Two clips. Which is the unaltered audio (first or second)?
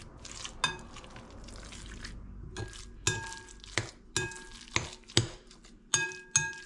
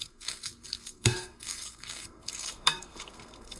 first